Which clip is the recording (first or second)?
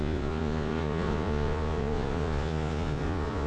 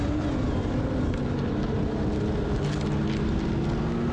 second